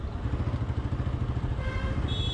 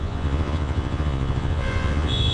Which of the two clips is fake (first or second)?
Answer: second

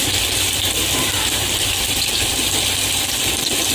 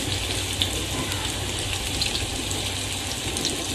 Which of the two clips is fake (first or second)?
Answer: first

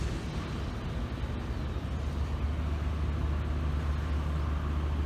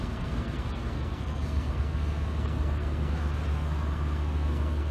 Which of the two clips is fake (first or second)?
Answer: second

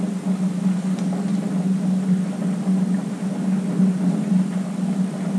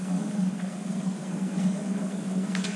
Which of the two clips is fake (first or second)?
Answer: second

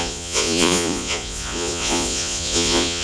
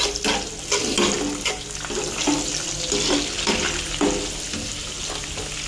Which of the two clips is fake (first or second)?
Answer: first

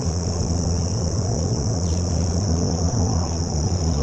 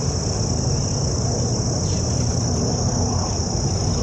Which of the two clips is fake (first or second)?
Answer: first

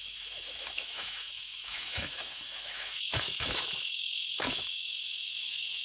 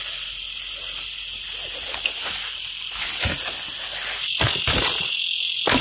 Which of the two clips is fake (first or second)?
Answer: first